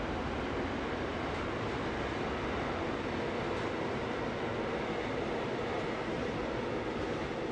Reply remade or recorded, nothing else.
recorded